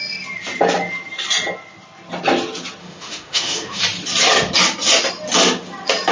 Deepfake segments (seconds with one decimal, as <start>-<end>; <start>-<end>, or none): 2.8-3.8